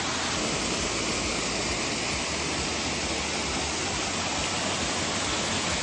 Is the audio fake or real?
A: real